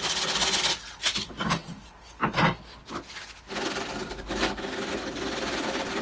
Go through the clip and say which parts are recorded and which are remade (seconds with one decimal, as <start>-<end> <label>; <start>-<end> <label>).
0.0-6.0 recorded